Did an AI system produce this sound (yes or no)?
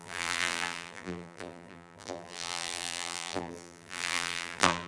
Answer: yes